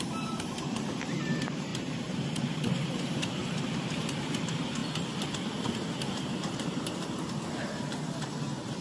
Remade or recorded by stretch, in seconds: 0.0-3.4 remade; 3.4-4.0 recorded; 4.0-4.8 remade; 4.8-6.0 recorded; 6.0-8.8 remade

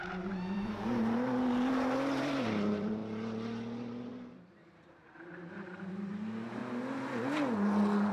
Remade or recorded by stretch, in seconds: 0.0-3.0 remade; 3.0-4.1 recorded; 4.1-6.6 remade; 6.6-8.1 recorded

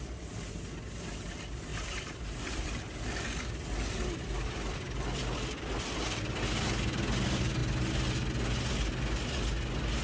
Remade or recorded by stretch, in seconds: 0.0-1.7 recorded; 1.7-6.4 remade; 6.4-10.0 recorded

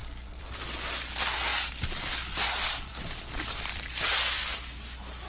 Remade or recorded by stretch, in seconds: 0.0-0.6 remade; 0.6-1.5 recorded; 1.5-4.4 remade; 4.4-5.3 recorded

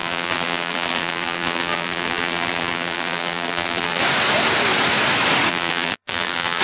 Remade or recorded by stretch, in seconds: 0.0-4.0 remade; 4.0-5.5 recorded; 5.5-6.6 remade

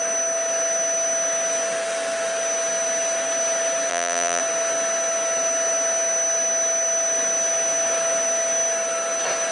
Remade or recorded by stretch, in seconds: 0.0-3.9 recorded; 3.9-4.4 remade; 4.4-9.5 recorded